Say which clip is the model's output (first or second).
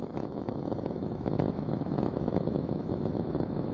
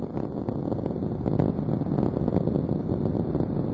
first